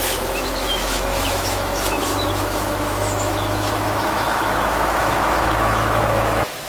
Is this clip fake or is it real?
fake